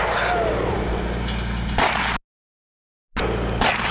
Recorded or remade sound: recorded